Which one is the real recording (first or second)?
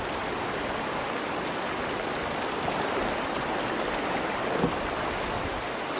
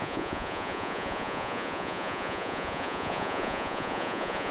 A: first